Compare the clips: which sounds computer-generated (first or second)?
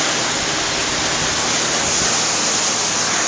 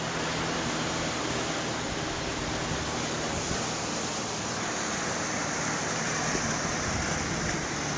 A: second